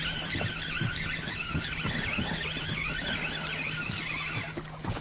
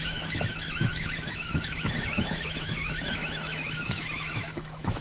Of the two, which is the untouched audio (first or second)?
first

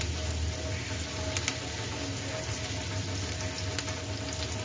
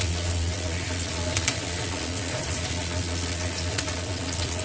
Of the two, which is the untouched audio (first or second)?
first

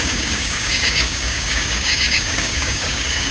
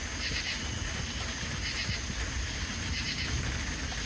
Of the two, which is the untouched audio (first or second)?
second